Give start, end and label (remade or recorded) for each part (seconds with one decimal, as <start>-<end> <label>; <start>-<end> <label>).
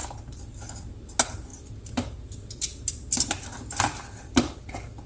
0.0-5.1 recorded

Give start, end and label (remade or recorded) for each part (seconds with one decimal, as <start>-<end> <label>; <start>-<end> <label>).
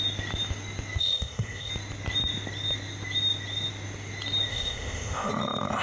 0.0-1.0 recorded; 1.0-1.7 remade; 1.7-4.5 recorded; 4.5-5.3 remade; 5.3-5.8 recorded